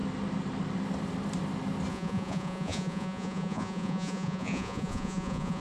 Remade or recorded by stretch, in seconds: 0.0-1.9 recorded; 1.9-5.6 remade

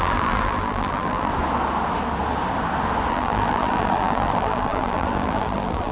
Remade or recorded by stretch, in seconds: 0.0-1.3 remade; 1.3-3.1 recorded; 3.1-5.9 remade

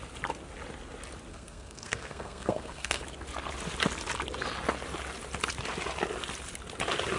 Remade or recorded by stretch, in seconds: 0.0-1.3 recorded; 1.3-3.0 remade; 3.0-7.2 recorded

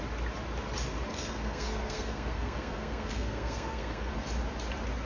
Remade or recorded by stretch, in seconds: 0.0-1.1 recorded; 1.1-4.1 remade; 4.1-5.0 recorded

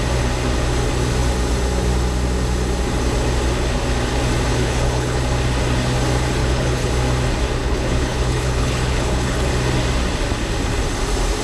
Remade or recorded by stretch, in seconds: 0.0-4.5 recorded; 4.5-5.2 remade; 5.2-6.4 recorded; 6.4-6.9 remade; 6.9-7.6 recorded; 7.6-9.5 remade; 9.5-11.4 recorded

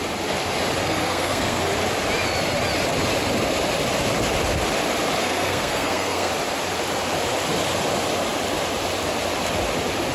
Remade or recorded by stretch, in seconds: 0.0-0.8 recorded; 0.8-1.6 remade; 1.6-5.2 recorded; 5.2-6.3 remade; 6.3-10.1 recorded